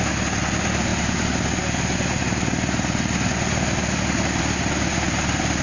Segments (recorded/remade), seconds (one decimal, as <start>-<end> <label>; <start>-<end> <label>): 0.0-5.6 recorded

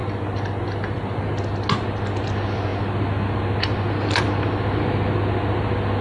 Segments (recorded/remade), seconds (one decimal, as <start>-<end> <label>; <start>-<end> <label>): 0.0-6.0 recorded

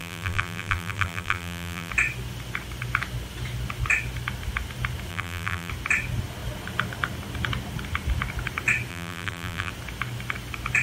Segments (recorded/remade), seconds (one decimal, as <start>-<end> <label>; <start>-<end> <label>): 0.0-1.9 remade; 1.9-5.1 recorded; 5.1-5.7 remade; 5.7-8.9 recorded; 8.9-9.7 remade; 9.7-10.8 recorded

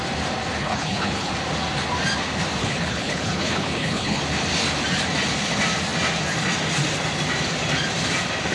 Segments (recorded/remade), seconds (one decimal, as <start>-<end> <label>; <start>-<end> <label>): 0.0-0.6 recorded; 0.6-1.3 remade; 1.3-2.6 recorded; 2.6-4.2 remade; 4.2-8.5 recorded

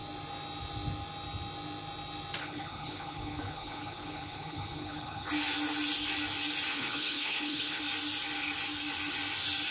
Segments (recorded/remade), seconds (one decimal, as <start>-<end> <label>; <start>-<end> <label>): 0.0-2.4 recorded; 2.4-5.3 remade; 5.3-6.7 recorded; 6.7-7.8 remade; 7.8-9.7 recorded

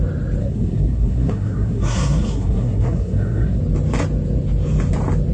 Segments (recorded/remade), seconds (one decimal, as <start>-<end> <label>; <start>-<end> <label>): 0.0-0.4 recorded; 0.4-3.6 remade; 3.6-5.3 recorded